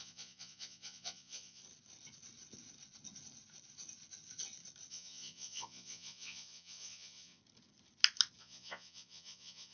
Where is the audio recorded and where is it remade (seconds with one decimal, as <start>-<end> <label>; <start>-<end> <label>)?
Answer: 0.0-1.6 remade; 1.6-4.9 recorded; 4.9-7.4 remade; 7.4-8.4 recorded; 8.4-9.7 remade